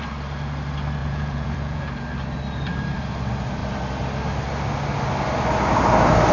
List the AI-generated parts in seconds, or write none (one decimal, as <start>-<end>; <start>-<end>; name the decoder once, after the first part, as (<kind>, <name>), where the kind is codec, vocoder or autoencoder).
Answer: 1.0-1.9 (vocoder, Vocos)